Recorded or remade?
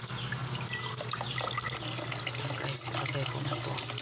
recorded